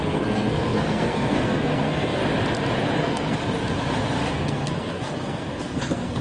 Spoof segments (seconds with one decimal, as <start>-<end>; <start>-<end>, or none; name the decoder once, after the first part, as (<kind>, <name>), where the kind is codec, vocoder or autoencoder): 0.0-2.2 (codec, SNAC); 2.9-3.4; 4.3-6.2